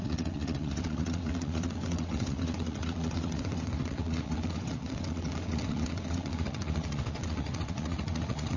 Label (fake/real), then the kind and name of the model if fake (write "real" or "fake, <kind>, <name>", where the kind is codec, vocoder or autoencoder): fake, vocoder, WaveNeXt